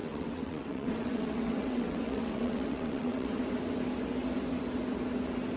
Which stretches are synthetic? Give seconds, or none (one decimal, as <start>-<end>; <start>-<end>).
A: 0.0-3.4